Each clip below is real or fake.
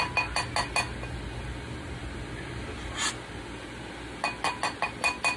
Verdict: real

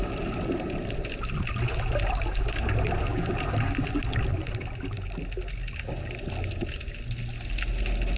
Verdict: real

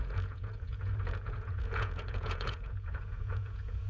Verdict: fake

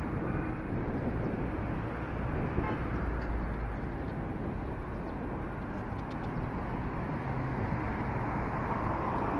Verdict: real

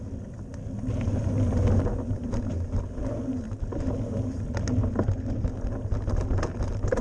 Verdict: real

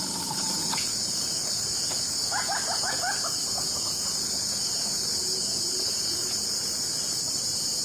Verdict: fake